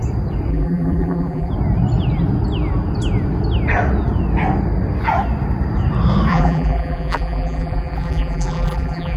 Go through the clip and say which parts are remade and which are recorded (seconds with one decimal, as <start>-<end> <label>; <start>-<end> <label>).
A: 0.0-0.5 recorded; 0.5-1.5 remade; 1.5-6.3 recorded; 6.3-9.2 remade